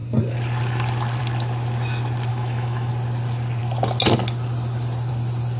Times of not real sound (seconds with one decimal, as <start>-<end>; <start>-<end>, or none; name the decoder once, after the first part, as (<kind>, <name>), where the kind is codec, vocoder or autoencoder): 2.3-2.9 (autoencoder, DAC-VAE)

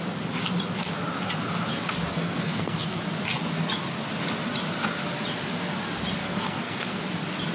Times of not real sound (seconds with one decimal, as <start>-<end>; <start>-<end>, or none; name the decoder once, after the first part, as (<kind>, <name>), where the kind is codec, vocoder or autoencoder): 2.1-3.0 (codec, SNAC); 6.2-7.0